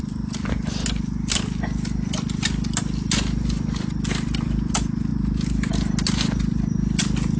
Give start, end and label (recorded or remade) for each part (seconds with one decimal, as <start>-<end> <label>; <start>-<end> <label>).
0.0-7.4 recorded